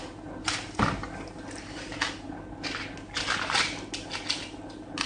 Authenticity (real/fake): real